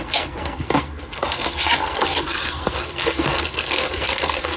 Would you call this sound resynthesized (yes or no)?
yes